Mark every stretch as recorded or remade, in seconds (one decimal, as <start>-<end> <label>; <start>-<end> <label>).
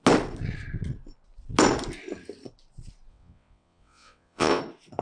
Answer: 0.0-3.1 recorded; 3.1-4.6 remade; 4.6-5.0 recorded